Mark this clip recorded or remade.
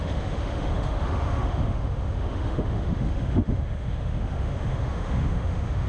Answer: remade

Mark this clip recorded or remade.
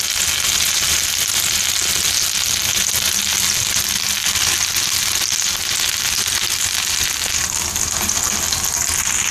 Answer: recorded